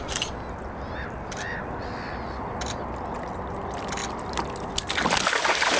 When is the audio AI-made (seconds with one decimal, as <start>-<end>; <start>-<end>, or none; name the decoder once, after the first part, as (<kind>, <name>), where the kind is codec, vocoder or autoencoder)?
none